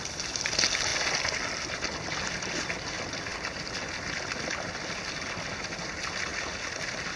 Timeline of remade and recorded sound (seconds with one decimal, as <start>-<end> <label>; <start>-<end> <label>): 0.0-7.2 recorded